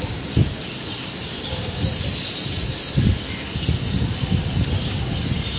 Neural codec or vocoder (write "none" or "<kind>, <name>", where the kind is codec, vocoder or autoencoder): none